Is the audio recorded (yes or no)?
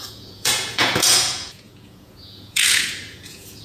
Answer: no